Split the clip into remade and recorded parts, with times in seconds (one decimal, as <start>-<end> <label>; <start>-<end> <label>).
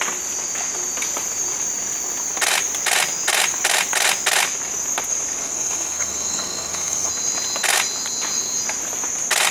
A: 0.0-5.4 recorded; 5.4-7.1 remade; 7.1-9.5 recorded